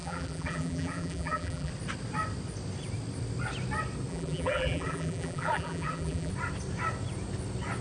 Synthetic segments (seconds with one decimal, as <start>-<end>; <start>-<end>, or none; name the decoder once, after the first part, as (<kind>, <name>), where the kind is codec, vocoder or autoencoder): 0.0-1.7 (vocoder, BigVGAN v2); 4.1-6.3